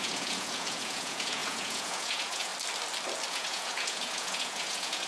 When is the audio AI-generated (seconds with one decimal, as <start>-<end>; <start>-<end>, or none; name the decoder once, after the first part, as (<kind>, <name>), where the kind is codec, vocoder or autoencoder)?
0.0-2.5 (vocoder, Vocos); 3.3-5.1